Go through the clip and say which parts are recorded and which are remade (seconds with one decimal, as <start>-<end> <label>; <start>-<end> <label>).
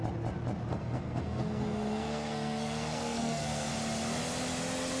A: 0.0-0.7 recorded; 0.7-3.7 remade; 3.7-5.0 recorded